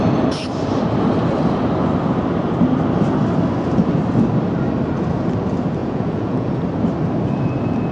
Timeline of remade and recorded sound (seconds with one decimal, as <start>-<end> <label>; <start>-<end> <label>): 0.0-5.8 recorded; 5.8-6.6 remade; 6.6-7.9 recorded